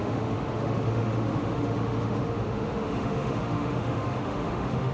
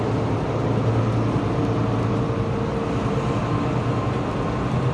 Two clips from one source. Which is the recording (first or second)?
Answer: second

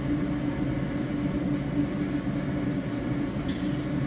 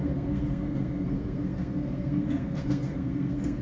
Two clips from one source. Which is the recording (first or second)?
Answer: first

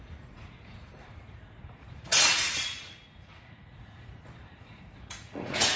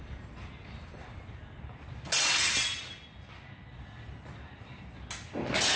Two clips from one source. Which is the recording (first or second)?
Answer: second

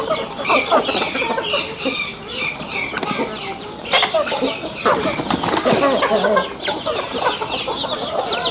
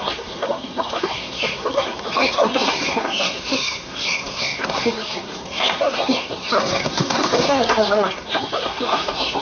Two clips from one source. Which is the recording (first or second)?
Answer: first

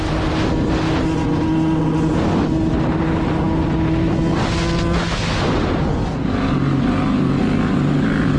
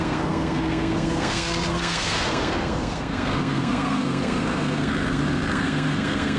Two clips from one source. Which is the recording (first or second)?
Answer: first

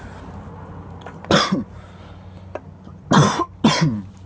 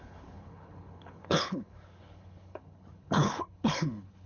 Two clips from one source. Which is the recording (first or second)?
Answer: first